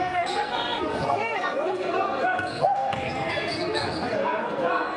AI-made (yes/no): yes